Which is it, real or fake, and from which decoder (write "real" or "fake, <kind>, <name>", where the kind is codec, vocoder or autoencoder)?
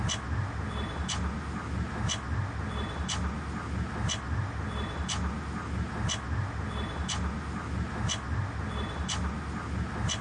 real